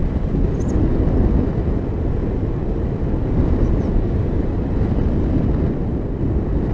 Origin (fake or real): real